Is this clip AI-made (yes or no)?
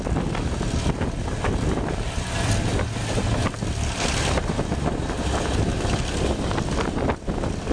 no